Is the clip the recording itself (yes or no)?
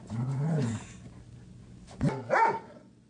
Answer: yes